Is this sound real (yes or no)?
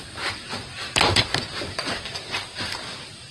yes